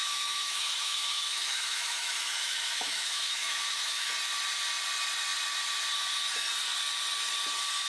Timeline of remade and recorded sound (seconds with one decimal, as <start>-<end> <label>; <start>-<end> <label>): 0.0-4.1 remade; 4.1-7.9 recorded